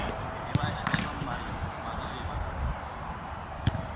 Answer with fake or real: real